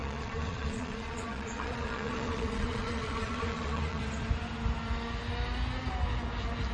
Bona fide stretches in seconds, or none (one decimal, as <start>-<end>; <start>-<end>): 4.0-6.7